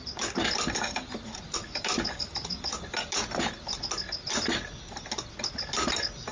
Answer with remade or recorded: recorded